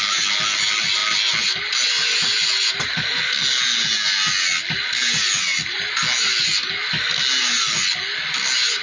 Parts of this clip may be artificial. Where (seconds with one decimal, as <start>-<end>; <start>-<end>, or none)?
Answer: none